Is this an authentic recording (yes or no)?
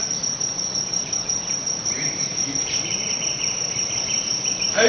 no